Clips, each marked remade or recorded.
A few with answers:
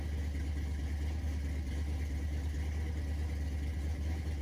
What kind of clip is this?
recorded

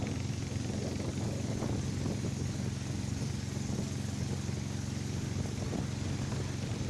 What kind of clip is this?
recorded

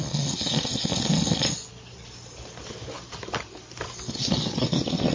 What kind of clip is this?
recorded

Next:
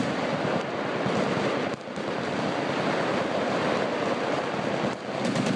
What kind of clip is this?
recorded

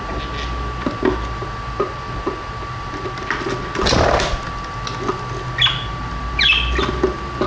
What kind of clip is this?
recorded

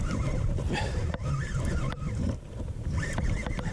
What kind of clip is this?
remade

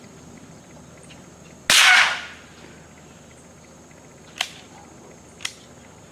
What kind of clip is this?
recorded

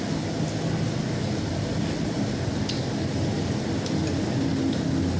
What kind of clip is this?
recorded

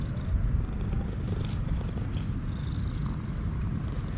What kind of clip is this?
recorded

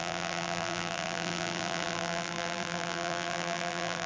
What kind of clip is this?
remade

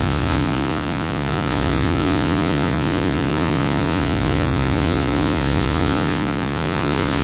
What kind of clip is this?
remade